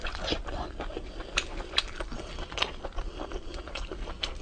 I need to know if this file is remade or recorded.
recorded